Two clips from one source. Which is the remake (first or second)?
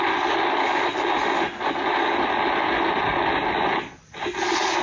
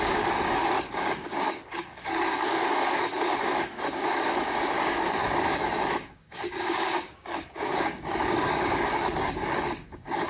second